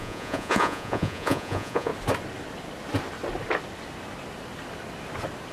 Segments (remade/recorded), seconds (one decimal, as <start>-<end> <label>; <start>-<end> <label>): 0.0-1.9 remade; 1.9-5.5 recorded